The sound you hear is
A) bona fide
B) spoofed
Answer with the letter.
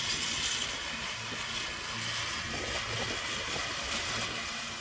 A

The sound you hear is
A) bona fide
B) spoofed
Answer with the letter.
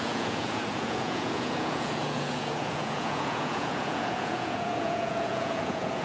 B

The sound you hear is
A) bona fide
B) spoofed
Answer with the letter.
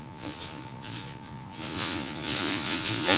B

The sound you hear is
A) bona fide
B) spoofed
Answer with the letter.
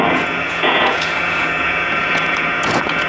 B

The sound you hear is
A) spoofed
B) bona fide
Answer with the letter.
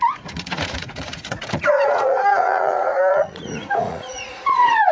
A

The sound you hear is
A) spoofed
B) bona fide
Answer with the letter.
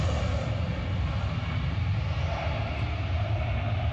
B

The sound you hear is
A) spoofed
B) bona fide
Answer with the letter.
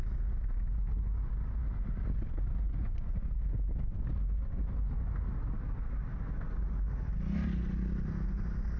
B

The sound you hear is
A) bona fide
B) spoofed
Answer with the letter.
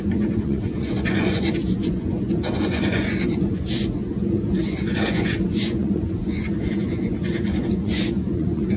B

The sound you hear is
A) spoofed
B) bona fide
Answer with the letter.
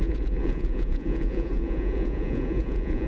A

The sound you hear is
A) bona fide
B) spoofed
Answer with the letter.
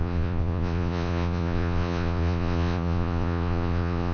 B